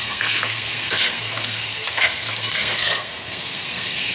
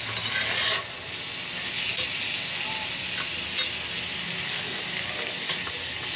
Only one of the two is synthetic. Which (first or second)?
first